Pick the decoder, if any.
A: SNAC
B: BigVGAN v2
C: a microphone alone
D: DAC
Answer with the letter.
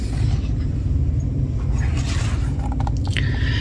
C